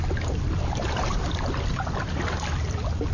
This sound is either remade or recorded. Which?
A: recorded